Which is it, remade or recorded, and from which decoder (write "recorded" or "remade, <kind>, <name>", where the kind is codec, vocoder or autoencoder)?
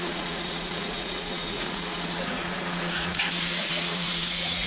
remade, vocoder, Vocos